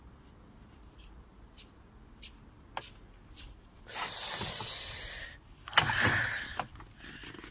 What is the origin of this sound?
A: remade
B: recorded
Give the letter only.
B